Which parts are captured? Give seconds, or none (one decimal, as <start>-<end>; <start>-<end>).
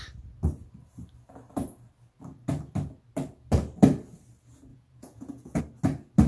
0.0-4.7; 5.6-6.3